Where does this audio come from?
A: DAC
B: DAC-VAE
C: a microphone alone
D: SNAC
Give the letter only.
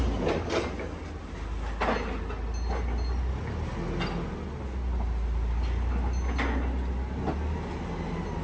C